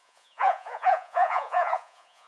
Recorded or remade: remade